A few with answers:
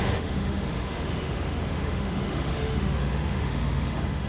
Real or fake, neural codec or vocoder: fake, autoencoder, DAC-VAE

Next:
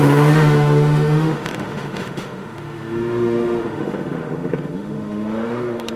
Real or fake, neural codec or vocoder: fake, autoencoder, DAC-VAE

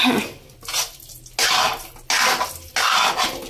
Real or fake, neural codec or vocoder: real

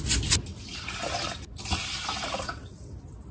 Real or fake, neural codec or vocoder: real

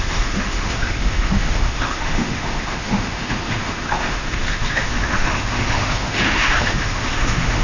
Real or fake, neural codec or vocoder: fake, autoencoder, DAC-VAE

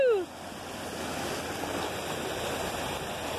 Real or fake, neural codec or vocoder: real